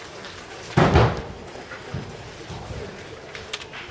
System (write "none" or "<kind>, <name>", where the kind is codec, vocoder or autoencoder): none